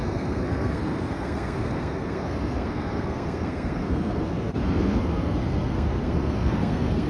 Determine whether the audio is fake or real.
fake